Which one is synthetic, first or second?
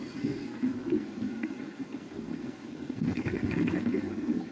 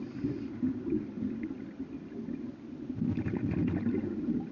first